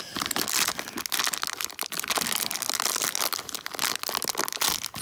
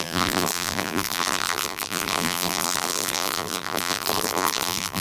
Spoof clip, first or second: second